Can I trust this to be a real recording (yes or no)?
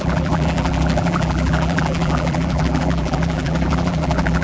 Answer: no